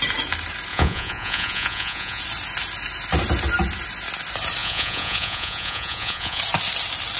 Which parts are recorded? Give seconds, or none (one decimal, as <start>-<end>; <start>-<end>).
0.0-0.7; 2.2-4.6; 6.4-7.2